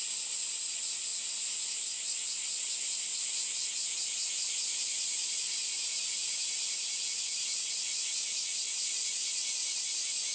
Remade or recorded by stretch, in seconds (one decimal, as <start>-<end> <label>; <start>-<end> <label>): 0.0-10.3 recorded